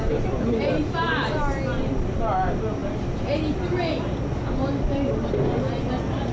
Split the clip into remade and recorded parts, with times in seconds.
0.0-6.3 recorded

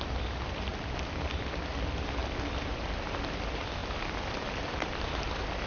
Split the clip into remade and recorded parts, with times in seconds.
0.0-0.7 remade; 0.7-1.7 recorded; 1.7-2.2 remade; 2.2-2.7 recorded; 2.7-3.8 remade; 3.8-5.7 recorded

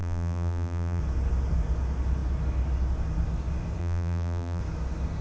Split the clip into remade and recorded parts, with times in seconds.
0.0-1.0 remade; 1.0-3.8 recorded; 3.8-4.6 remade; 4.6-5.2 recorded

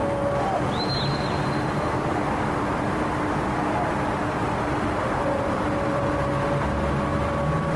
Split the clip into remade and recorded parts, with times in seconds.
0.0-7.1 remade; 7.1-7.8 recorded

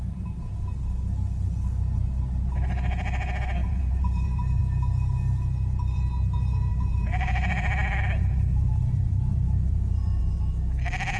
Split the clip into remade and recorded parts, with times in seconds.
0.0-3.6 recorded; 3.6-4.6 remade; 4.6-6.7 recorded; 6.7-10.2 remade; 10.2-11.2 recorded

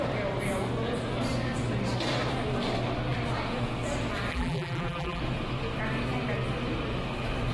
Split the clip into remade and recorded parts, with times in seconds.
0.0-4.3 recorded; 4.3-5.2 remade; 5.2-7.5 recorded

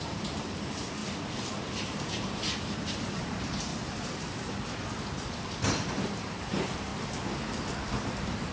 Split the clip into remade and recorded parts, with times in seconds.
0.0-1.0 remade; 1.0-1.5 recorded; 1.5-6.9 remade; 6.9-7.8 recorded; 7.8-8.5 remade

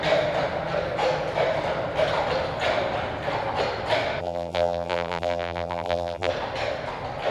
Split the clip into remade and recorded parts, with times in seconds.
0.0-4.2 recorded; 4.2-6.3 remade; 6.3-7.3 recorded